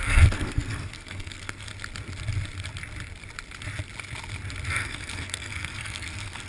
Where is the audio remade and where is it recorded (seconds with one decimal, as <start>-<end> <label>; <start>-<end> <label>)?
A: 0.0-1.7 remade; 1.7-4.7 recorded; 4.7-6.5 remade